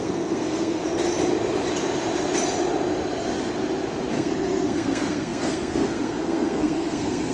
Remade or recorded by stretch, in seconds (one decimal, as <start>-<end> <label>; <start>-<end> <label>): 0.0-0.8 remade; 0.8-4.1 recorded; 4.1-7.3 remade